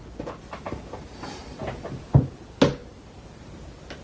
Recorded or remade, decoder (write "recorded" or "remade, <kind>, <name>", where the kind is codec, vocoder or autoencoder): recorded